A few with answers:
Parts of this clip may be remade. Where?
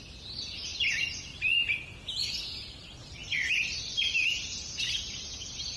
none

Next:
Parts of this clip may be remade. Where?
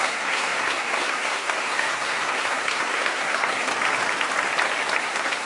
0.0-3.7 (codec, SNAC); 5.0-5.5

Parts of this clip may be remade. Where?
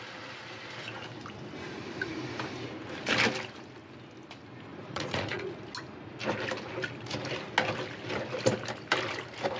4.7-5.6 (vocoder, Vocos)